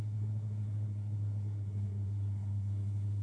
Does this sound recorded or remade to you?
remade